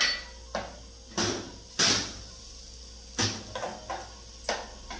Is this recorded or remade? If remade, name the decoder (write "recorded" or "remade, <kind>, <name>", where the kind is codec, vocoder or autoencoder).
recorded